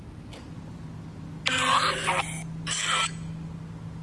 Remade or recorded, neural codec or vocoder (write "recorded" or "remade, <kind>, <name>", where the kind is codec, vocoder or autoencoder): recorded